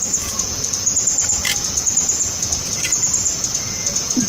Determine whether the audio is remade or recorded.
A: remade